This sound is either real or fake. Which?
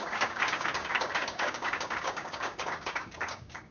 fake